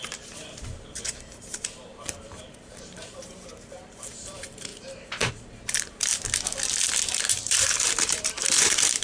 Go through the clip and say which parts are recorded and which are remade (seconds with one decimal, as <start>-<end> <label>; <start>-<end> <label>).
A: 0.0-6.1 remade; 6.1-7.3 recorded; 7.3-9.0 remade